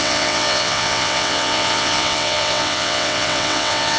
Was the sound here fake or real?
fake